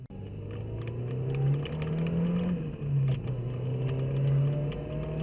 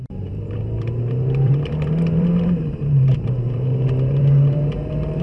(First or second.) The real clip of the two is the first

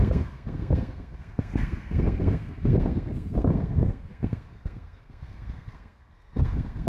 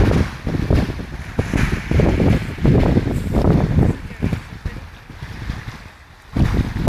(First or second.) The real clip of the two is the second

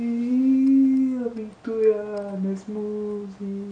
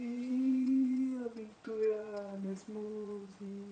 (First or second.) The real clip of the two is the first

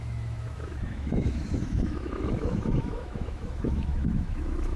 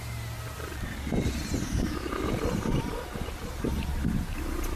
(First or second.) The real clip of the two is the second